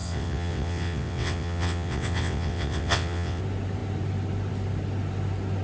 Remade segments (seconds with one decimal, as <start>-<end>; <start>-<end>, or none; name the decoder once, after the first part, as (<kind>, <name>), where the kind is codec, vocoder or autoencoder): 0.0-3.4 (vocoder, WaveNeXt)